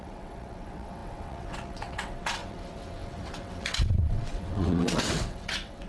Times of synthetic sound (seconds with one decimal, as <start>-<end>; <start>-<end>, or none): 0.0-5.9